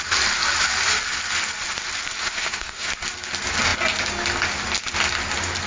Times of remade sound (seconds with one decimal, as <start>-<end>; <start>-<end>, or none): 2.2-2.9